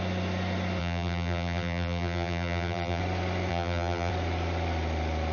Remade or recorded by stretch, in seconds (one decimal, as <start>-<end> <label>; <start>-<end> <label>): 0.0-0.8 recorded; 0.8-3.0 remade; 3.0-3.5 recorded; 3.5-4.1 remade; 4.1-5.3 recorded